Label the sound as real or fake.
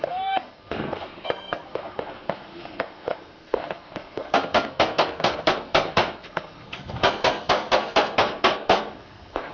fake